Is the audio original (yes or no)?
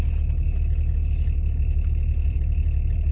no